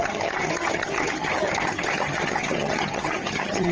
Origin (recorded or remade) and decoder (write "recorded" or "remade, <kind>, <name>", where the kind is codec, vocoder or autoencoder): remade, vocoder, HiFi-GAN